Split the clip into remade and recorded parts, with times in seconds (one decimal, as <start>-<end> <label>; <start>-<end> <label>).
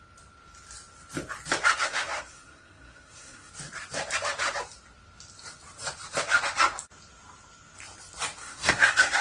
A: 0.0-1.8 recorded; 1.8-3.5 remade; 3.5-8.4 recorded; 8.4-9.2 remade